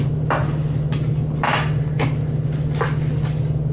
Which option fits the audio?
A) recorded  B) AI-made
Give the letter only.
A